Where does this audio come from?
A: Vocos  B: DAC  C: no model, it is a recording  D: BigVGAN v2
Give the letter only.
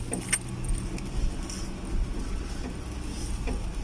C